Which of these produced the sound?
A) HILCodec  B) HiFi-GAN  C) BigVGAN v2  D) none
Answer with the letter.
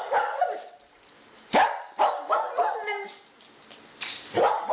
D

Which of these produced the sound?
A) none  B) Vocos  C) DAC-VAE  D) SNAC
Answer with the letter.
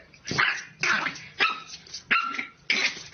A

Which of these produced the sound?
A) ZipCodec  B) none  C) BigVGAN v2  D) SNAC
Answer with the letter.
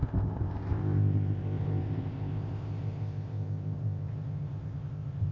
A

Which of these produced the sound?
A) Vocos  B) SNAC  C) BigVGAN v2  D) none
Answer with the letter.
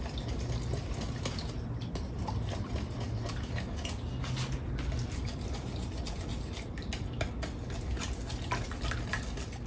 D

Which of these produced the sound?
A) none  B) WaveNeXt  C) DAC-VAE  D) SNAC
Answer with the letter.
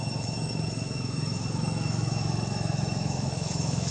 C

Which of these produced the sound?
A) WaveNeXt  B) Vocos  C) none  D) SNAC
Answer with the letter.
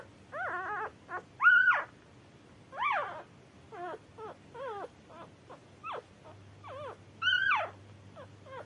C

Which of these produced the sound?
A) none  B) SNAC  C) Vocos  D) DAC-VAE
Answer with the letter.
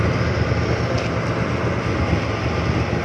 A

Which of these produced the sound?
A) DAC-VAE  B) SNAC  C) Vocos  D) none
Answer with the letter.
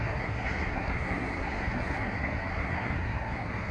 B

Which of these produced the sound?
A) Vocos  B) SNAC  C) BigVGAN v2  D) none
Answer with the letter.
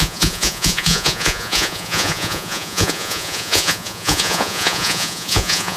A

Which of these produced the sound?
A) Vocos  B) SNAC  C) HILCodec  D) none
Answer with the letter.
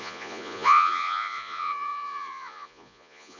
A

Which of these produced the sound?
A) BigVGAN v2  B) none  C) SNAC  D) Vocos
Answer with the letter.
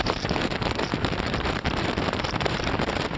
A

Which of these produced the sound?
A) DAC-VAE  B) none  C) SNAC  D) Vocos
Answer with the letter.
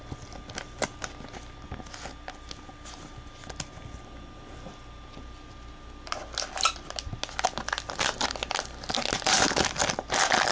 B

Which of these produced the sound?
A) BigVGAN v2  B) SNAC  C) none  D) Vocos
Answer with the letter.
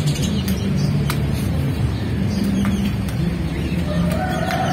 A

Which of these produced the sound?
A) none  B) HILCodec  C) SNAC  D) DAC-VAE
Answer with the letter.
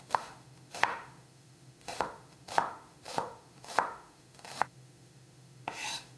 D